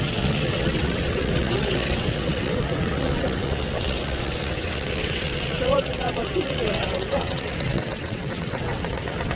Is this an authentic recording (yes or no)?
no